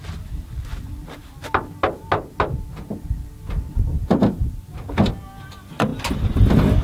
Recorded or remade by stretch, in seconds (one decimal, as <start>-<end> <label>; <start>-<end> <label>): 0.0-6.8 recorded